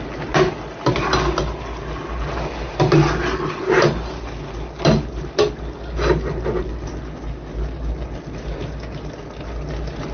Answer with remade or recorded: recorded